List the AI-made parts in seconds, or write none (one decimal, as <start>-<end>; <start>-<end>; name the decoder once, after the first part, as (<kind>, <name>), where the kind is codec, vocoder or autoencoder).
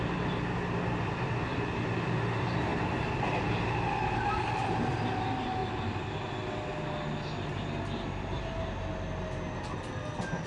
none